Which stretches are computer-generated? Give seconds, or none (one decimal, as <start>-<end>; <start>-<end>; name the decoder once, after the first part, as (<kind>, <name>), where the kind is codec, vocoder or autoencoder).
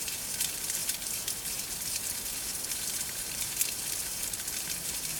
0.0-5.2 (vocoder, BigVGAN v2)